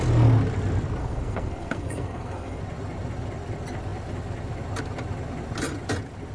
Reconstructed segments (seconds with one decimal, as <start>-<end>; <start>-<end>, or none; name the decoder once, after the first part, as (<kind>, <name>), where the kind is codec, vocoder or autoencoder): 1.0-2.6 (codec, SNAC)